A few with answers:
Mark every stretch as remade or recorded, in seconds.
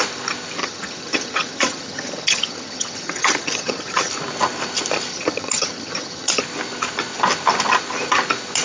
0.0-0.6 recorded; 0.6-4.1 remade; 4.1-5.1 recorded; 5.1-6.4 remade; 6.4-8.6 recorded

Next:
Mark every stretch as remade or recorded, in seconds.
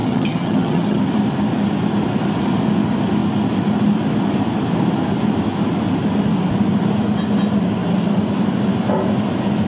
0.0-1.0 remade; 1.0-9.7 recorded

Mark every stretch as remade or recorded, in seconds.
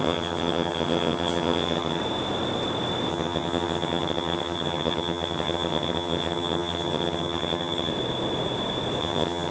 0.0-2.0 remade; 2.0-3.1 recorded; 3.1-7.9 remade; 7.9-9.0 recorded; 9.0-9.5 remade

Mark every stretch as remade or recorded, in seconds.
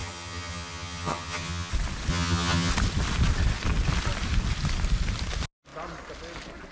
0.0-1.7 remade; 1.7-2.1 recorded; 2.1-2.7 remade; 2.7-6.7 recorded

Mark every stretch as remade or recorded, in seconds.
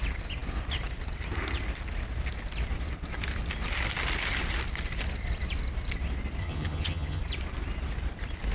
0.0-6.4 recorded; 6.4-7.2 remade; 7.2-8.5 recorded